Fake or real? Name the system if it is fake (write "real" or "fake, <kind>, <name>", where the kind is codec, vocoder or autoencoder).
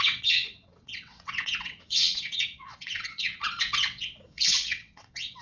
fake, vocoder, WaveNeXt